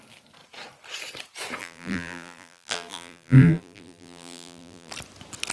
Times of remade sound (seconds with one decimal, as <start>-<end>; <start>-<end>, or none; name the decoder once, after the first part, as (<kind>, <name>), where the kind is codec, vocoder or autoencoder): 1.6-4.9 (vocoder, BigVGAN v2)